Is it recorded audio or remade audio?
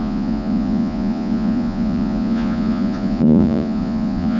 remade